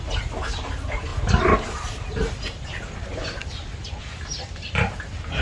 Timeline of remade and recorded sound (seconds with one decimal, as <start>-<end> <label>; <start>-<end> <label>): 0.0-3.4 recorded; 3.4-4.0 remade; 4.0-5.4 recorded